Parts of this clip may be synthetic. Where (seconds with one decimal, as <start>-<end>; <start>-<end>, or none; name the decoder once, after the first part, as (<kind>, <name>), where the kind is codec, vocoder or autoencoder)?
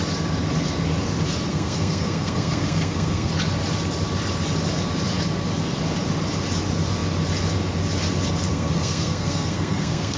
1.5-3.3 (codec, SNAC); 8.5-10.2